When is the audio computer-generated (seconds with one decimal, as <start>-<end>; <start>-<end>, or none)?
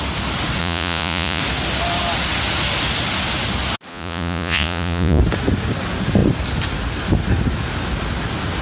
0.6-1.4; 3.9-5.2